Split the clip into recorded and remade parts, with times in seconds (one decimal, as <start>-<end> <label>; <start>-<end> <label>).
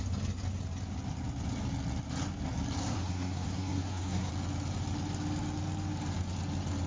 0.0-2.8 recorded; 2.8-4.3 remade; 4.3-6.9 recorded